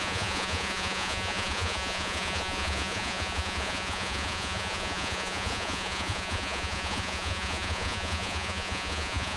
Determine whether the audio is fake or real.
fake